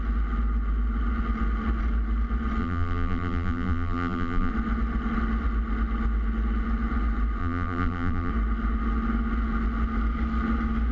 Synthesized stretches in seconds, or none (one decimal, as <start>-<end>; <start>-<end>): 2.6-4.5; 7.4-8.3